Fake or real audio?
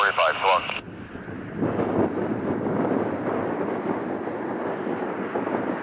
real